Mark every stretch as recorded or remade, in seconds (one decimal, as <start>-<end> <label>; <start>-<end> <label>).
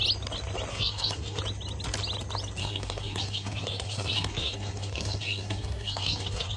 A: 0.0-0.7 recorded; 0.7-1.4 remade; 1.4-2.6 recorded; 2.6-6.6 remade